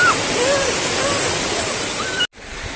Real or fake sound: real